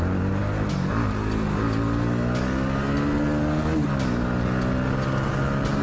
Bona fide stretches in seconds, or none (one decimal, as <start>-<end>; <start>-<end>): 0.0-5.8